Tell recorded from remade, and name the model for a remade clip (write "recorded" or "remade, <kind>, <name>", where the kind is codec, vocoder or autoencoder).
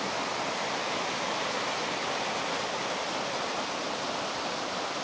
recorded